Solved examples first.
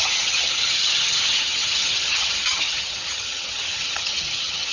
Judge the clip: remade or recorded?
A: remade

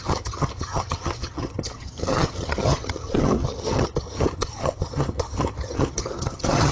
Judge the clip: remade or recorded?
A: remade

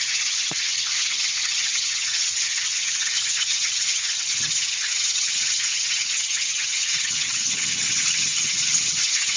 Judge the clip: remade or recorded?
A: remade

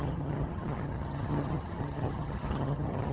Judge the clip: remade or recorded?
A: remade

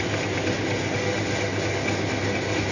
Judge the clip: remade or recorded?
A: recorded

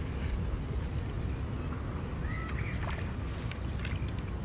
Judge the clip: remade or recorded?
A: recorded